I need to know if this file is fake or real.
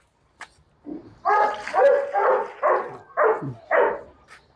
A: real